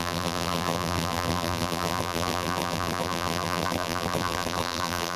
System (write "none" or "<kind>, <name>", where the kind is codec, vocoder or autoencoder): vocoder, BigVGAN v2